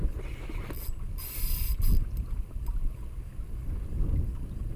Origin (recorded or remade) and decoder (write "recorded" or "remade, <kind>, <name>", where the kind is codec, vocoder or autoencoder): recorded